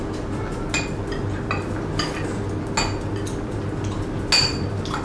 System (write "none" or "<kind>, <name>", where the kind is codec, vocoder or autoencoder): none